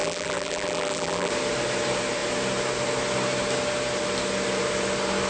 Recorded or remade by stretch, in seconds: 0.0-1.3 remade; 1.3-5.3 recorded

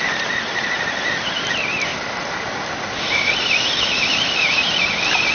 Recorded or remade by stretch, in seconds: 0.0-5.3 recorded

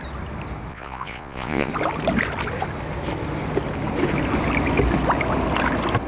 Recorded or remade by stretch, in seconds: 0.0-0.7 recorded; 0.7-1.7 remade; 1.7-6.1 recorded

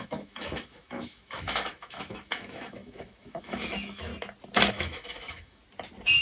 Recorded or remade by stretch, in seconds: 0.0-4.1 remade; 4.1-4.7 recorded; 4.7-5.6 remade; 5.6-6.2 recorded

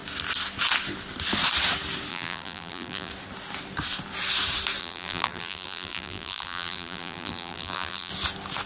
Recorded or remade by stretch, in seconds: 0.0-2.1 recorded; 2.1-3.1 remade; 3.1-4.8 recorded; 4.8-8.1 remade; 8.1-8.7 recorded